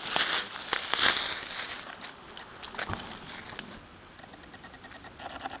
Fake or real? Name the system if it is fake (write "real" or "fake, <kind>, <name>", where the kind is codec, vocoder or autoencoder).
real